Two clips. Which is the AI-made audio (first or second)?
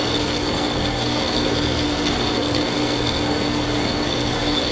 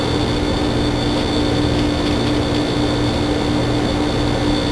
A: first